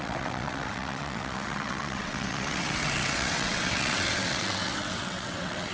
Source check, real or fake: fake